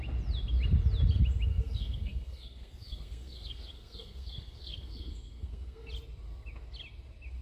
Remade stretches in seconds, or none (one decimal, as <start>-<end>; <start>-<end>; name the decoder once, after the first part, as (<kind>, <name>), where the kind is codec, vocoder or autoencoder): 1.5-5.9 (codec, SNAC)

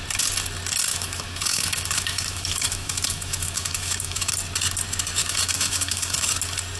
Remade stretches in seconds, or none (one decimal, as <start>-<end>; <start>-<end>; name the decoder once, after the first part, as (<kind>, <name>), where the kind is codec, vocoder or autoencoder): 0.9-4.3 (autoencoder, DAC-VAE); 5.2-6.2

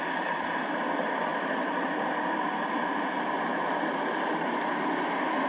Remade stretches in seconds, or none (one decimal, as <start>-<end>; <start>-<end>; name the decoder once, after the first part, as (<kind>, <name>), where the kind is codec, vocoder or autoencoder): none

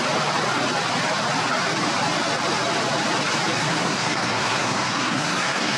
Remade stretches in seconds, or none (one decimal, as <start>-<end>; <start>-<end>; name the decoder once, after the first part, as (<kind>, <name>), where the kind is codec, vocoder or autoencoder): 3.6-5.8 (codec, SNAC)

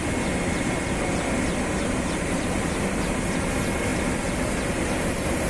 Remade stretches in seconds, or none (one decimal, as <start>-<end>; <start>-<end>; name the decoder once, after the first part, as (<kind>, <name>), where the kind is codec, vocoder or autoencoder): none

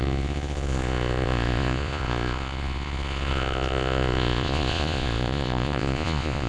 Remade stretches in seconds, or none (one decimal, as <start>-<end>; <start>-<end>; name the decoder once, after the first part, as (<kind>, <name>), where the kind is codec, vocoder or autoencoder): 0.0-6.5 (vocoder, Vocos)

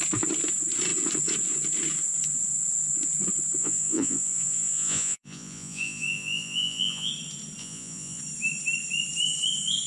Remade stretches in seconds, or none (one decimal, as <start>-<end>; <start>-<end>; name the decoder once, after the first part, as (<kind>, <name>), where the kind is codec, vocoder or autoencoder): 3.6-7.1 (vocoder, Vocos); 7.6-8.2

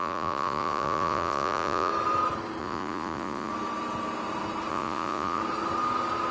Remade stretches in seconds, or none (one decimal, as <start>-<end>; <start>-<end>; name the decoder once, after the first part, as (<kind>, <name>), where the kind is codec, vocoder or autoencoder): 0.0-1.9 (vocoder, Vocos); 2.6-3.5; 4.7-5.4